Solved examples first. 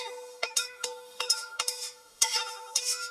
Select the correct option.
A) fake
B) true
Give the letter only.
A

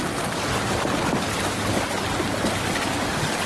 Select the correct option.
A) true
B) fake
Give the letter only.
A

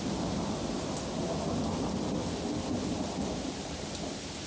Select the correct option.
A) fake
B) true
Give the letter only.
B